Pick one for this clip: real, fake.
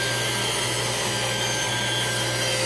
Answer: real